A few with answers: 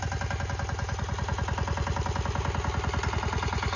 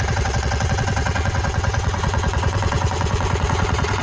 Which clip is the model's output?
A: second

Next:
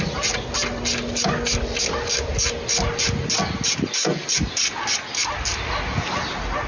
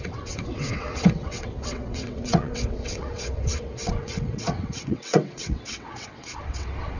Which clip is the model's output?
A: second